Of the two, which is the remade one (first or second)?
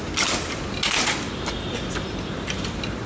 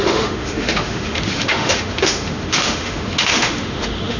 second